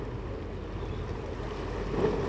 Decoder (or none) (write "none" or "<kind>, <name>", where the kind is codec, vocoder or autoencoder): none